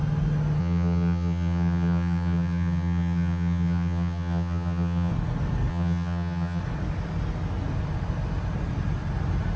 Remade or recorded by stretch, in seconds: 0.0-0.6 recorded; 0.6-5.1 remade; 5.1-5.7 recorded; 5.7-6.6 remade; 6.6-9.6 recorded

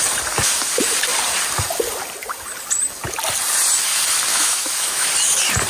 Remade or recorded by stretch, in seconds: 0.0-4.3 recorded; 4.3-5.1 remade; 5.1-5.7 recorded

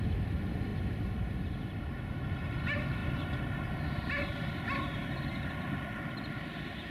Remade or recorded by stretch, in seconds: 0.0-0.7 recorded; 0.7-2.0 remade; 2.0-6.9 recorded

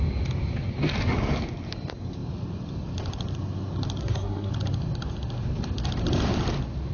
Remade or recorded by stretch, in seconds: 0.0-4.0 recorded; 4.0-4.5 remade; 4.5-6.9 recorded

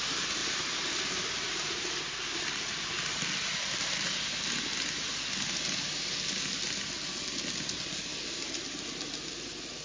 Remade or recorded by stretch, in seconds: 0.0-0.4 recorded; 0.4-4.1 remade; 4.1-8.1 recorded; 8.1-8.6 remade; 8.6-9.8 recorded

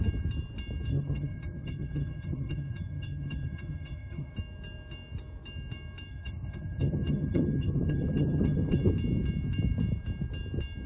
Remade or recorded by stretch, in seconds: 0.0-0.9 recorded; 0.9-4.3 remade; 4.3-6.1 recorded; 6.1-8.8 remade; 8.8-10.9 recorded

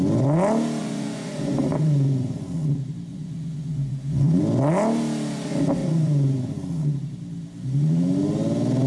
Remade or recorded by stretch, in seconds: 0.0-0.8 recorded; 0.8-2.5 remade; 2.5-3.1 recorded; 3.1-4.4 remade; 4.4-5.8 recorded; 5.8-6.5 remade; 6.5-8.9 recorded